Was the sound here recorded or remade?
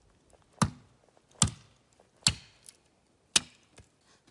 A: recorded